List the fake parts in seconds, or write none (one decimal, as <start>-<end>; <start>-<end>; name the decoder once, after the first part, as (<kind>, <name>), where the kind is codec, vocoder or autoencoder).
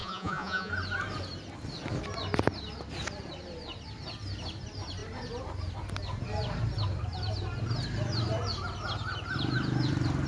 0.0-0.7 (vocoder, Vocos)